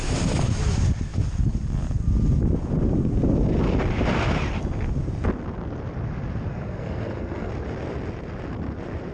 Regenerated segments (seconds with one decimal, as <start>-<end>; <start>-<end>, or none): 6.5-7.5